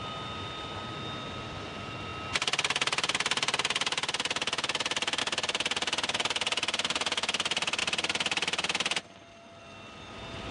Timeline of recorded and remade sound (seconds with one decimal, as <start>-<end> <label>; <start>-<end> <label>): 0.0-10.5 recorded